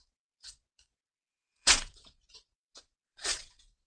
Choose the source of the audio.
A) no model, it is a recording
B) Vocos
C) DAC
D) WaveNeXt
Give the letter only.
D